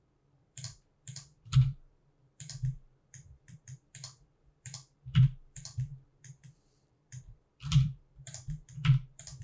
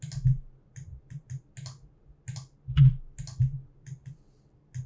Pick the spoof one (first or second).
first